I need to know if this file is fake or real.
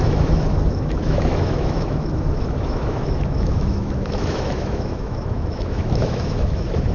fake